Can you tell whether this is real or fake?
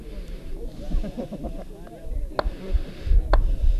real